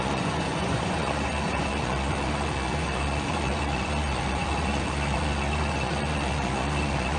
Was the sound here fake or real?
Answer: fake